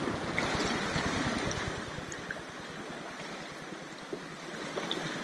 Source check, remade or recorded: recorded